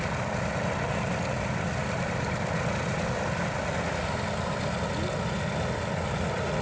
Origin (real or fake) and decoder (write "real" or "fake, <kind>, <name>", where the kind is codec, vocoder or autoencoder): real